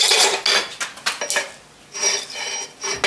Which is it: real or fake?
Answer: real